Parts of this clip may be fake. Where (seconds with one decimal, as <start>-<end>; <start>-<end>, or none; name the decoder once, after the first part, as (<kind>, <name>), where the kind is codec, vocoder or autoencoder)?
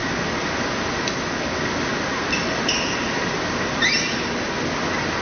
none